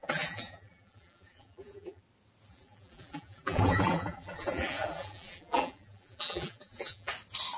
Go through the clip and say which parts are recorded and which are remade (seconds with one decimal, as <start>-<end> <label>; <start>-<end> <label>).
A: 0.0-2.0 remade; 2.0-2.5 recorded; 2.5-7.1 remade; 7.1-7.6 recorded